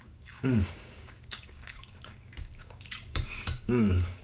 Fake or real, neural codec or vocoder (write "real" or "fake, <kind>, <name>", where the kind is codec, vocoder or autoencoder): fake, codec, DAC